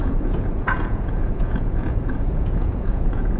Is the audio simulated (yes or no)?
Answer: yes